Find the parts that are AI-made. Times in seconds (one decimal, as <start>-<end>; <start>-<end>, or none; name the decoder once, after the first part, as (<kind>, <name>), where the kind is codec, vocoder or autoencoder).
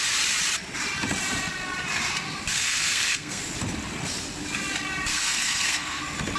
2.5-3.4 (codec, SNAC); 5.1-6.0